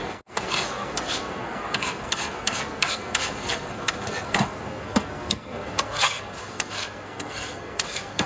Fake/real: fake